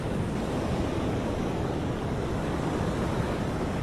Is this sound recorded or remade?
remade